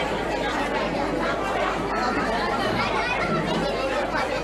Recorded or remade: remade